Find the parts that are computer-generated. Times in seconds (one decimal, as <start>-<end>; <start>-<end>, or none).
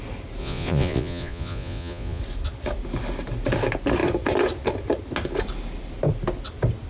0.4-2.2